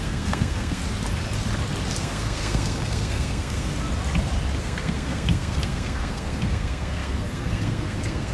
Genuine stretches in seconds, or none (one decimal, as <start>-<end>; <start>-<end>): 0.8-2.0; 3.7-4.6